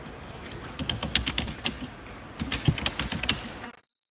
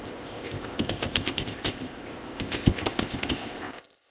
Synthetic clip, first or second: second